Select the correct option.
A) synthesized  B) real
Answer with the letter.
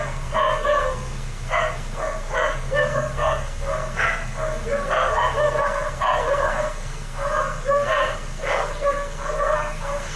A